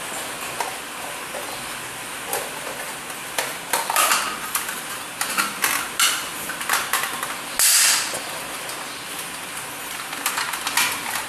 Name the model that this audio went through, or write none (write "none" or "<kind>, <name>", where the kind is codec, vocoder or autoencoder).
none